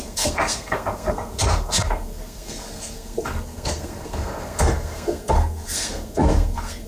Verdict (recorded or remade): remade